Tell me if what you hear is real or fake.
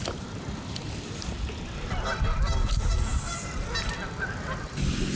real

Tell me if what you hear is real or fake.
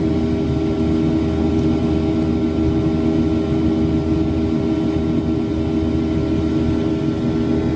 real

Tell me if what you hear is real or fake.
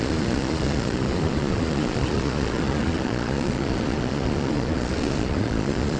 fake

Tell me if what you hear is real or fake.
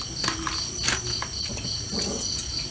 real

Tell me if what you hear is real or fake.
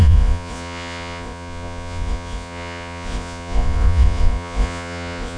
fake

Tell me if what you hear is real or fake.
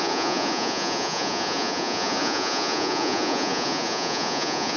fake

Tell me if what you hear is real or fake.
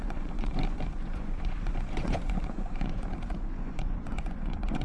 fake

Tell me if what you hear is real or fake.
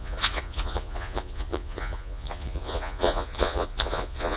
fake